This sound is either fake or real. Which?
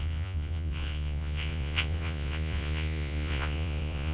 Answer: fake